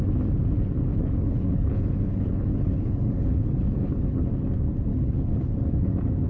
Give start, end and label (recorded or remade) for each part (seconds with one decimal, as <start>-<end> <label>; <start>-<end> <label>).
0.0-0.9 recorded; 0.9-4.3 remade; 4.3-4.9 recorded; 4.9-5.6 remade; 5.6-6.3 recorded